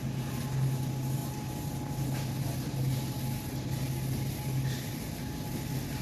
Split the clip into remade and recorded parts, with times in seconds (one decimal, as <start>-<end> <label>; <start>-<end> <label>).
0.0-6.0 recorded